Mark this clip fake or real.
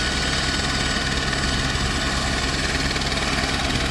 real